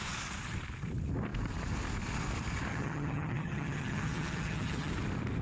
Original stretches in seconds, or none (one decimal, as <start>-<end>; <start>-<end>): 0.0-2.7; 4.9-5.4